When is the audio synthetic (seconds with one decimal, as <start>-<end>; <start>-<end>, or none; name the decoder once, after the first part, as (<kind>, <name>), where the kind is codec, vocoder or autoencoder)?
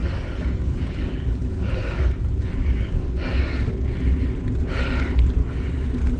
0.0-3.7 (codec, DAC); 5.4-6.2